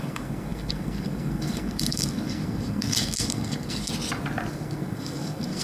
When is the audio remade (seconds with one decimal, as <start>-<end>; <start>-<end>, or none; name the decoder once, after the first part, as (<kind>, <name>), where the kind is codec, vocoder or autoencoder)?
0.0-3.9 (codec, SNAC); 4.5-5.6